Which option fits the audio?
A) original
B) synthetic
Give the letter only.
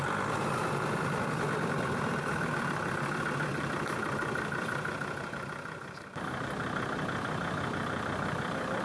B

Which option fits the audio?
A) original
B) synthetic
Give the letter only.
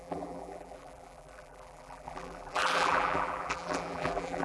B